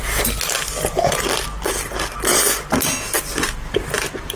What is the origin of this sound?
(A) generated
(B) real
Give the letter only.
B